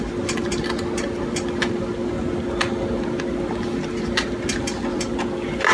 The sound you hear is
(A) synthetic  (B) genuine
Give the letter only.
B